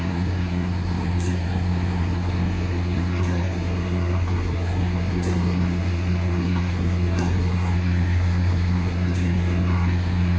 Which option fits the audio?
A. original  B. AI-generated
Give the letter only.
B